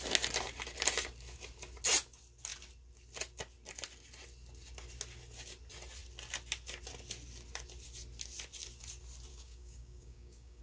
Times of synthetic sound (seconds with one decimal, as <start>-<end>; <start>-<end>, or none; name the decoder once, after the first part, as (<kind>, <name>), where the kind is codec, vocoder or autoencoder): 9.3-10.6 (codec, DAC)

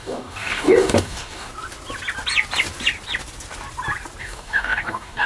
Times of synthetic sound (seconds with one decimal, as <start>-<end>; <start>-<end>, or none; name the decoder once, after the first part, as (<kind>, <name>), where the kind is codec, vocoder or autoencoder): 0.0-1.5 (codec, DAC); 4.2-5.3

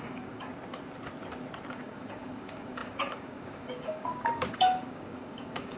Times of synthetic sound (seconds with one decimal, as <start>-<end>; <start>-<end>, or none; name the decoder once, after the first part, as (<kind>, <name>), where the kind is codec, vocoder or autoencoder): 0.0-0.5 (codec, DAC); 1.7-5.8

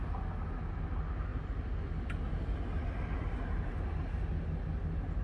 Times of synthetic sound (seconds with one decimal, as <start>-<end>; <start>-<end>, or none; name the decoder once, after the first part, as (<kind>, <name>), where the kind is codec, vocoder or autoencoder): none

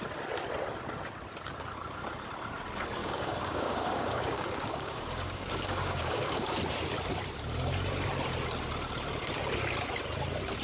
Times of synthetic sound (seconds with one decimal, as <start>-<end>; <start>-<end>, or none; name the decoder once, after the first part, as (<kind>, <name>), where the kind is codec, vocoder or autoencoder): 3.0-6.6 (codec, DAC)

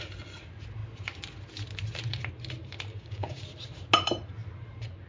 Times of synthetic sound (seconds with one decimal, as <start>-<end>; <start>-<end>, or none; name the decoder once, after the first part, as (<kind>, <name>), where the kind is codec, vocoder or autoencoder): 2.9-3.4 (codec, DAC)